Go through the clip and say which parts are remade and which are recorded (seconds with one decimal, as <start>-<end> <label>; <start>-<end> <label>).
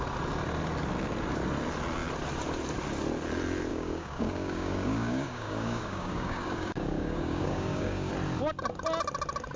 0.0-3.7 recorded; 3.7-8.1 remade; 8.1-9.6 recorded